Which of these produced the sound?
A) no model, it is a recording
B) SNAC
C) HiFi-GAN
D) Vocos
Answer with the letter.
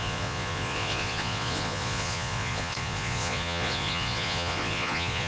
D